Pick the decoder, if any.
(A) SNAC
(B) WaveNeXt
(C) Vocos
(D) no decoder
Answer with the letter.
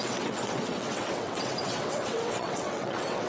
B